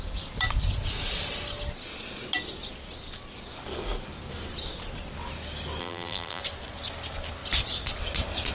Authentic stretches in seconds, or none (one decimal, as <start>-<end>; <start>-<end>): 0.0-5.8; 6.4-8.5